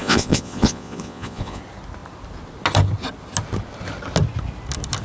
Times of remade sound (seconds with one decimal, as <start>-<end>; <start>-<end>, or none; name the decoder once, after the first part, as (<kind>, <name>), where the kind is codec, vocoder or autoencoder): 0.0-1.6 (vocoder, Vocos)